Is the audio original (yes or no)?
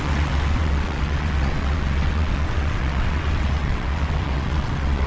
no